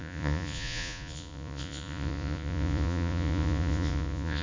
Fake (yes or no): yes